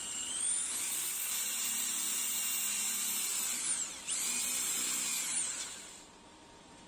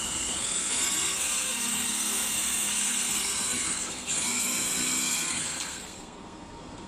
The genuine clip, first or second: first